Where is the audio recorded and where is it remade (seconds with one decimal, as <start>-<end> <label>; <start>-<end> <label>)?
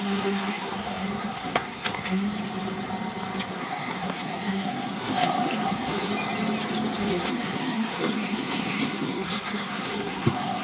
0.0-2.3 remade; 2.3-3.5 recorded; 3.5-6.1 remade; 6.1-7.0 recorded; 7.0-10.6 remade